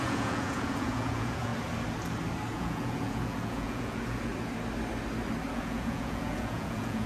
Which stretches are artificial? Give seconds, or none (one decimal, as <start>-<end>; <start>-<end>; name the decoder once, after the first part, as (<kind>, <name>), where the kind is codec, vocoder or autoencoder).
0.0-1.5 (vocoder, Vocos); 2.5-4.3; 5.5-7.1